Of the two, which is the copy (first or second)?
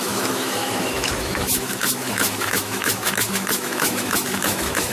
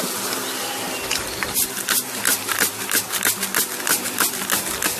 first